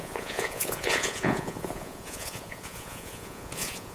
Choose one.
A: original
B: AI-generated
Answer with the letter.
B